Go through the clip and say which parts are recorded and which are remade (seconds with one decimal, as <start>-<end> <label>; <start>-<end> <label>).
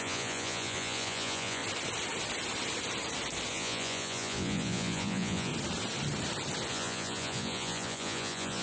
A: 0.0-1.6 remade; 1.6-3.5 recorded; 3.5-5.5 remade; 5.5-6.7 recorded; 6.7-8.6 remade